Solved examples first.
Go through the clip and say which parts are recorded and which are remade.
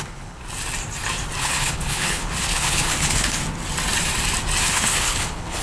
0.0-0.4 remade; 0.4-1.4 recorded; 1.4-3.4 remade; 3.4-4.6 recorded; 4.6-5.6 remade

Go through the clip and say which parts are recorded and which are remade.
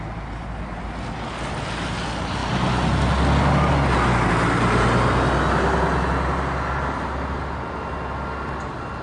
0.0-9.0 recorded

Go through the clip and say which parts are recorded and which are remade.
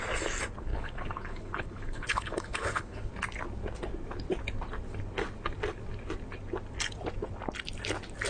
0.0-0.7 recorded; 0.7-3.1 remade; 3.1-8.3 recorded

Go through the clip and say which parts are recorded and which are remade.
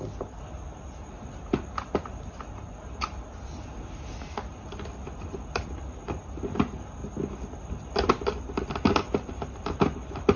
0.0-10.4 recorded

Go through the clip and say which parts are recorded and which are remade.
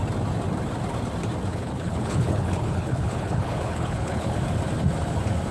0.0-1.5 recorded; 1.5-4.4 remade; 4.4-5.5 recorded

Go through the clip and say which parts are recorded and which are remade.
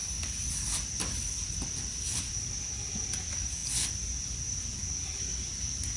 0.0-6.0 recorded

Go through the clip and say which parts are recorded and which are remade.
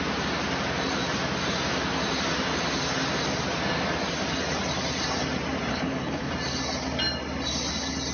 0.0-5.7 recorded; 5.7-6.3 remade; 6.3-8.1 recorded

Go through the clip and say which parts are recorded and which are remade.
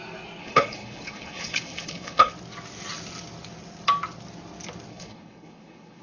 0.0-0.4 recorded; 0.4-2.3 remade; 2.3-4.9 recorded; 4.9-6.0 remade